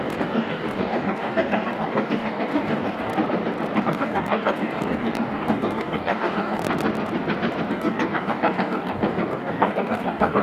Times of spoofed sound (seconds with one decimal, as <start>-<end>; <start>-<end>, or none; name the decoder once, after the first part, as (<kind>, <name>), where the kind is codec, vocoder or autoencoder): 0.0-3.1 (codec, DAC); 3.8-6.6; 7.7-10.4